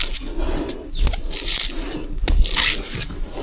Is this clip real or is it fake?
real